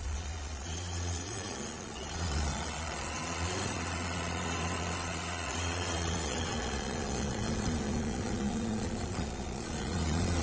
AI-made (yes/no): yes